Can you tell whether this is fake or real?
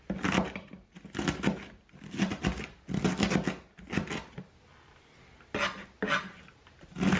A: real